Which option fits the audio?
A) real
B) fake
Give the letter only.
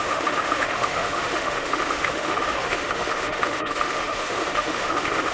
B